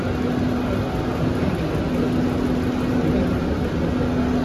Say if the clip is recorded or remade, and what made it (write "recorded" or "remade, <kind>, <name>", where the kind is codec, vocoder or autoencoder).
recorded